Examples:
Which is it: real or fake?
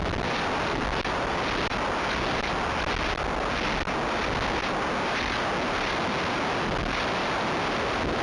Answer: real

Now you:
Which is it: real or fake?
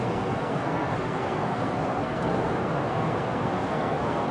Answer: fake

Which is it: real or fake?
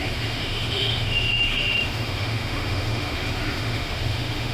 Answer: fake